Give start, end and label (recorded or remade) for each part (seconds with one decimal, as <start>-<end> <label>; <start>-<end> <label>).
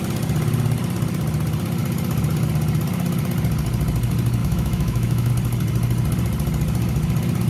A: 0.0-4.4 recorded; 4.4-5.3 remade; 5.3-7.5 recorded